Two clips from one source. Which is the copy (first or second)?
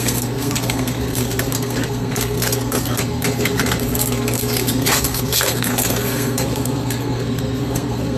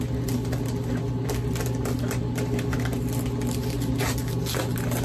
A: first